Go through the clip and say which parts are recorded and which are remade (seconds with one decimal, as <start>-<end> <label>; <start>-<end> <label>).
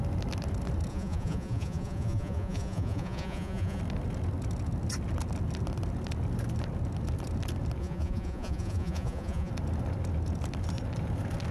0.0-0.9 recorded; 0.9-3.8 remade; 3.8-7.8 recorded; 7.8-9.5 remade; 9.5-11.5 recorded